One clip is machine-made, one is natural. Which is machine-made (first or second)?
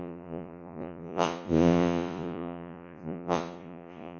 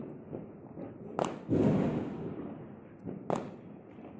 first